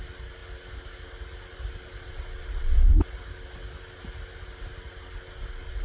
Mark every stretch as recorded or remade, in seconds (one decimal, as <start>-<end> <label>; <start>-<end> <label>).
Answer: 0.0-5.8 recorded